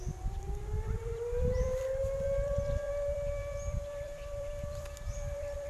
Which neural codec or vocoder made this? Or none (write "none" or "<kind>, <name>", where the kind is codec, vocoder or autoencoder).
vocoder, BigVGAN v2